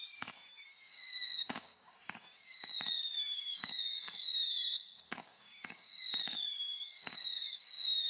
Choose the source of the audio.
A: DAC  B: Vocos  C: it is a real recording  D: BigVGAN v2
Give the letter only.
A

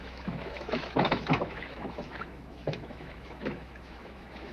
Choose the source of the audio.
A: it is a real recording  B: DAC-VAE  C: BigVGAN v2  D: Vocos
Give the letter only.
B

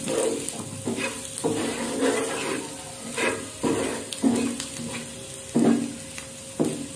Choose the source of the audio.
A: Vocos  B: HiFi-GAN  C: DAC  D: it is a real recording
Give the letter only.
D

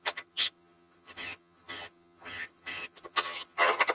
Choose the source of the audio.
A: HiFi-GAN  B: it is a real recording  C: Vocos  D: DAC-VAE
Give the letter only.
A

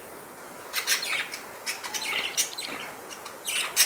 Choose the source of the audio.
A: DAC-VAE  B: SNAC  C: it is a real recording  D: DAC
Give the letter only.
C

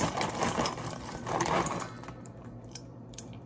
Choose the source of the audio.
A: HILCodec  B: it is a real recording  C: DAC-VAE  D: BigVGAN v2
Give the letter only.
D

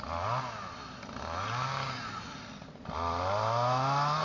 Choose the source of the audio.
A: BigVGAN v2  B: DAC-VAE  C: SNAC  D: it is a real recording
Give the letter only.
D